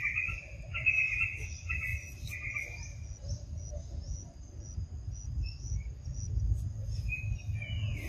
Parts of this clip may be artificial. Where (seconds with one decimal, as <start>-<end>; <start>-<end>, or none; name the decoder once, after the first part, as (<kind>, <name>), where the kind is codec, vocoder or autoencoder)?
none